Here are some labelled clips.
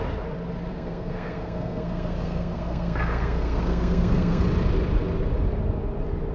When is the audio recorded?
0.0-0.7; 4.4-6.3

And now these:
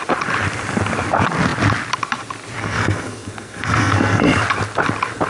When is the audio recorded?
0.0-2.6; 4.2-5.3

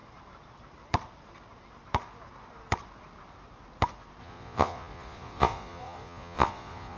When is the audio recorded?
0.0-4.2

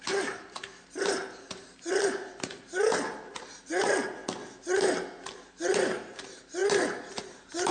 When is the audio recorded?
4.2-5.6

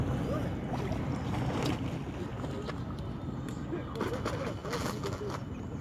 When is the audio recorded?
0.0-4.6; 5.2-5.8

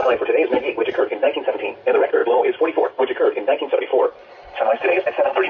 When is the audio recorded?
0.0-1.0; 2.2-2.9; 3.9-5.5